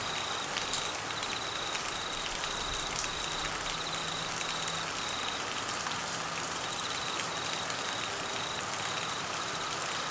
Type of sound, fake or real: real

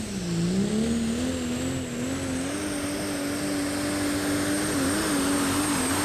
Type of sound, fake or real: real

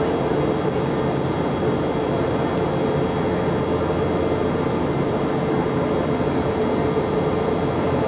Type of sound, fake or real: real